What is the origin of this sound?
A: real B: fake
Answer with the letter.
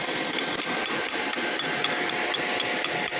A